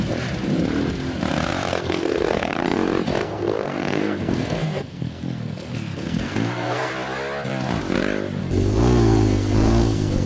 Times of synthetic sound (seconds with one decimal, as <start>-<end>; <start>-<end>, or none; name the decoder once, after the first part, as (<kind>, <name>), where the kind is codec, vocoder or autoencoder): 1.7-2.6 (codec, SNAC); 3.2-6.9; 8.4-10.3